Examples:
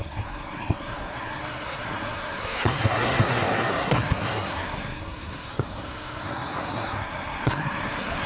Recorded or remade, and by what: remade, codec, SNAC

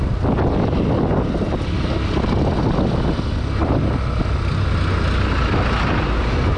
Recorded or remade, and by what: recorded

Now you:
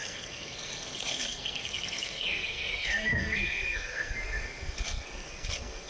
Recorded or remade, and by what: remade, codec, SNAC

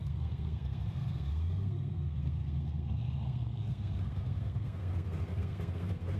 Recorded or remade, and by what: remade, codec, SNAC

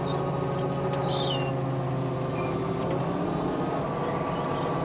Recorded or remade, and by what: recorded